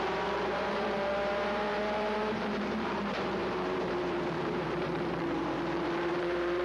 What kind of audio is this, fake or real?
fake